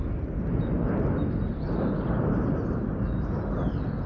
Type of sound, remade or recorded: recorded